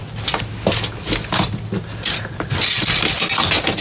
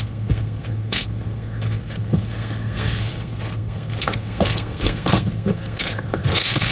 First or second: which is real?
first